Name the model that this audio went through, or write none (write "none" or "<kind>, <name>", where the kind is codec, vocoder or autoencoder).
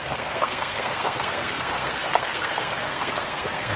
codec, SNAC